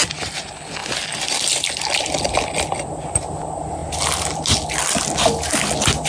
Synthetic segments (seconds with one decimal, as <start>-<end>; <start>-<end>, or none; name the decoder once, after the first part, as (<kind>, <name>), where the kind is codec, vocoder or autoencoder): none